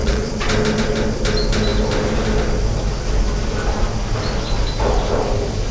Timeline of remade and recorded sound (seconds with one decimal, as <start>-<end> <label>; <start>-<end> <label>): 0.0-0.5 remade; 0.5-5.7 recorded